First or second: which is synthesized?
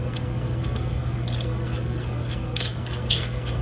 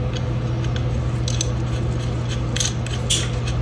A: first